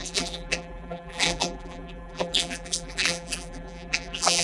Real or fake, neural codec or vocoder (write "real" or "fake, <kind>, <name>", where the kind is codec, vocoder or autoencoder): fake, vocoder, BigVGAN v2